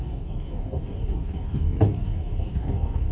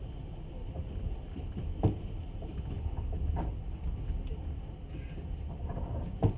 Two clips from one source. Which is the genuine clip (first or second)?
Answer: second